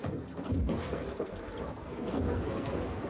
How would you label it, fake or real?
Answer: fake